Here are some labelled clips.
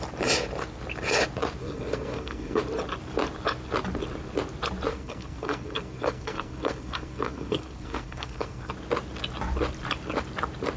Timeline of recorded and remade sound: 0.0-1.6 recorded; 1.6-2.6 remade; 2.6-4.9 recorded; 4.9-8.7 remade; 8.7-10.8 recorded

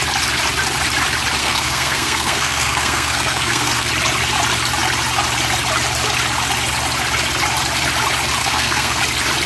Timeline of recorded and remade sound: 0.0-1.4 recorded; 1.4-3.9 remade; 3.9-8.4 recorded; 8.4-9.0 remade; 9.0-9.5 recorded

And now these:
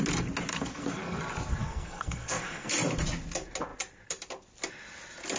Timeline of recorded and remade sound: 0.0-0.5 recorded; 0.5-1.2 remade; 1.2-1.6 recorded; 1.6-2.7 remade; 2.7-5.4 recorded

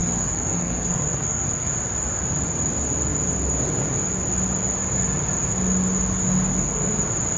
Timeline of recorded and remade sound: 0.0-1.7 remade; 1.7-6.5 recorded; 6.5-7.0 remade; 7.0-7.4 recorded

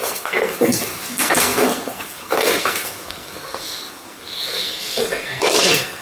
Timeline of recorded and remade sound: 0.0-6.0 remade

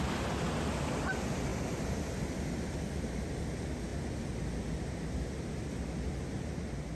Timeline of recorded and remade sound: 0.0-6.9 recorded

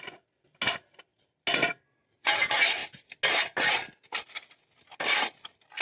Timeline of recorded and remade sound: 0.0-5.8 recorded